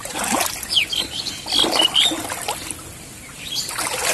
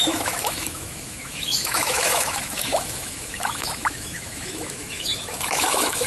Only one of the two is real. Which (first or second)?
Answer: first